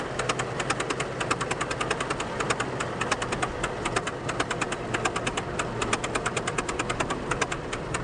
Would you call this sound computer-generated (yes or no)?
no